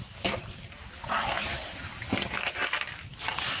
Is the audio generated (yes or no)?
no